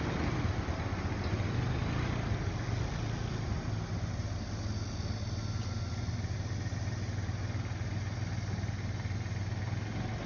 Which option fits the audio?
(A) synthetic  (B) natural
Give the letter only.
B